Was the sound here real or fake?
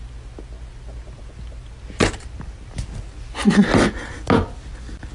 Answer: real